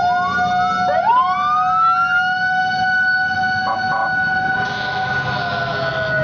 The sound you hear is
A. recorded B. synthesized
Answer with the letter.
A